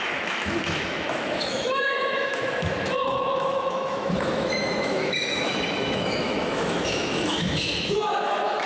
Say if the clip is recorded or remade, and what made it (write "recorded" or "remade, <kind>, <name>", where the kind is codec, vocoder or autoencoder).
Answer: remade, autoencoder, DAC-VAE